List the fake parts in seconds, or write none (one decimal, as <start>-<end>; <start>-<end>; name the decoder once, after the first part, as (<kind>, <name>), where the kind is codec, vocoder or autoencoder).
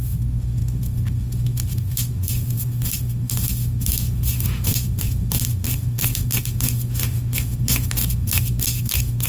0.0-9.3 (autoencoder, DAC-VAE)